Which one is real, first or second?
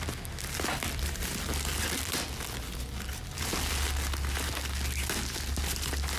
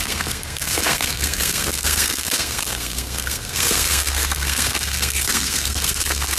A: first